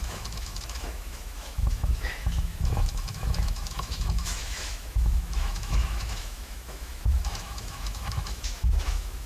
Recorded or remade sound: remade